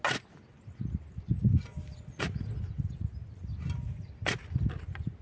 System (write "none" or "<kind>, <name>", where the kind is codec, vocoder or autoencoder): none